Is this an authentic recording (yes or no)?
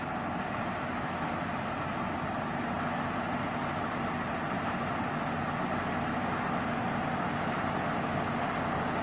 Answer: yes